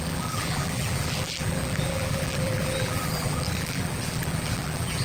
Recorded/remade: remade